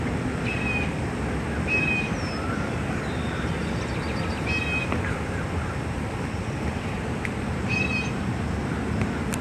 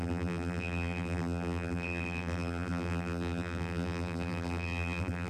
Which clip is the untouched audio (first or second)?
first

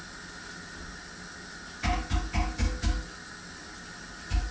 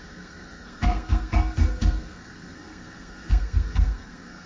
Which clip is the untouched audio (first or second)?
first